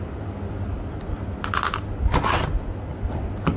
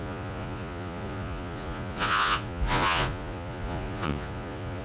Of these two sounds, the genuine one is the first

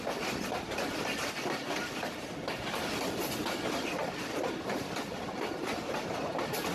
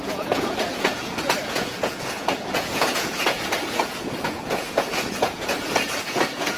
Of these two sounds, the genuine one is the first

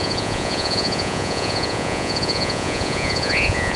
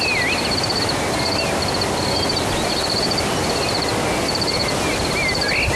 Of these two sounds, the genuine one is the second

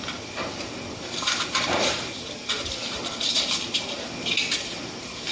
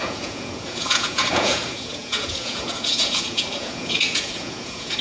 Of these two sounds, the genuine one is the first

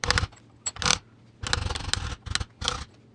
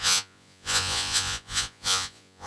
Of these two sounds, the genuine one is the first